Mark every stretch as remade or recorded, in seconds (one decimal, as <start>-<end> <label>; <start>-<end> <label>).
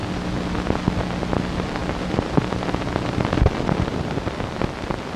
0.0-1.8 recorded; 1.8-4.6 remade; 4.6-5.2 recorded